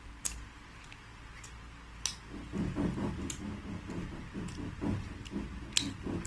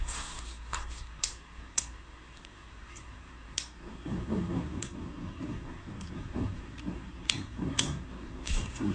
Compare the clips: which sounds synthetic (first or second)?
second